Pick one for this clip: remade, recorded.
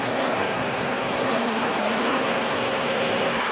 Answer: remade